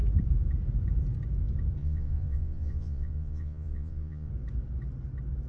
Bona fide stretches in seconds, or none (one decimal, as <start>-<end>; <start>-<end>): 0.0-1.8; 4.3-5.5